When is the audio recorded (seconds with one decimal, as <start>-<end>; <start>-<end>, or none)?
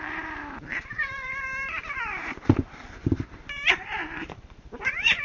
none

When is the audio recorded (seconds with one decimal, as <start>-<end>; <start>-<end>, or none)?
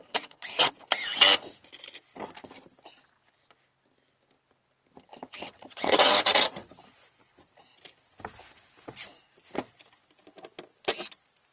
0.7-5.1; 6.2-11.5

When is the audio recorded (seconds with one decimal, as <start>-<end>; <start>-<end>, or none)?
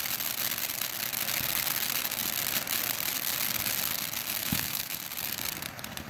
0.0-4.4; 5.0-6.1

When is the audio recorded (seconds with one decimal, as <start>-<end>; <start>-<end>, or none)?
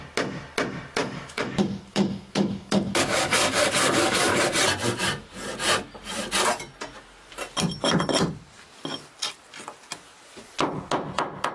0.0-1.0; 4.4-11.5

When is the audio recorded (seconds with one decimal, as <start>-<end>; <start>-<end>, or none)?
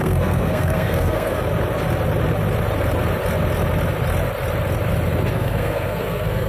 1.4-5.3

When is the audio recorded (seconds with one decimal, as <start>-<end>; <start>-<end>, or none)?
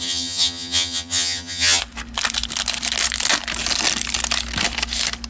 1.8-5.3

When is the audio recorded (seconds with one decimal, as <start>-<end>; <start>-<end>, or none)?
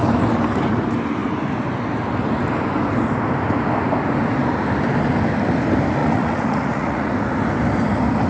0.0-6.0; 7.1-8.3